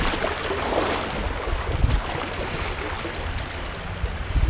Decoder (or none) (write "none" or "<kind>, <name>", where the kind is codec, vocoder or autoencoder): none